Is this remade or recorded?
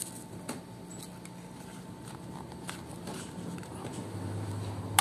recorded